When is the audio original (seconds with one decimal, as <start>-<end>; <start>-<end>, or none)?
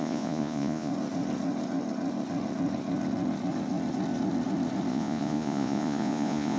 0.9-4.9